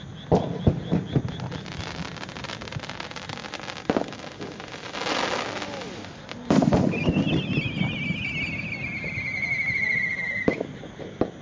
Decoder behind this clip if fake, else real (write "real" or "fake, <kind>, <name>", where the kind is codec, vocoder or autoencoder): real